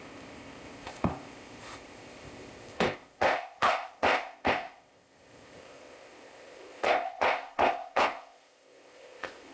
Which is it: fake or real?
fake